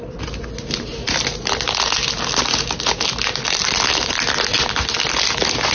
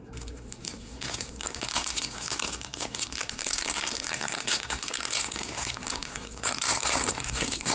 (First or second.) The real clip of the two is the first